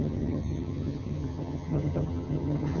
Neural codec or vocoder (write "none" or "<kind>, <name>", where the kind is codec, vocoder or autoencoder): vocoder, HiFi-GAN